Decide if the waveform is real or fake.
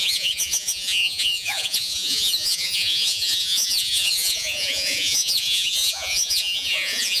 fake